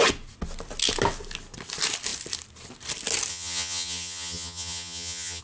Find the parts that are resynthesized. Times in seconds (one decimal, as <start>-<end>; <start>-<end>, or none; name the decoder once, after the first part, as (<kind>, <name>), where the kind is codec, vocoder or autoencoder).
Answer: 3.3-5.4 (vocoder, HiFi-GAN)